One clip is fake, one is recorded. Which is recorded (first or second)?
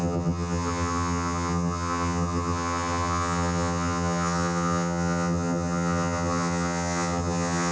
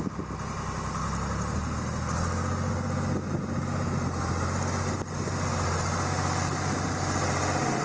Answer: second